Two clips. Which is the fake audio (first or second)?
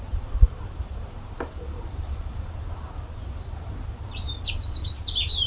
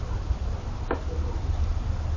first